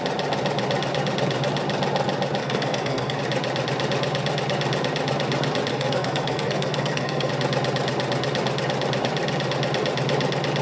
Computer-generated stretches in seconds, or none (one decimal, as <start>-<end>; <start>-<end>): 2.4-3.2; 5.7-7.3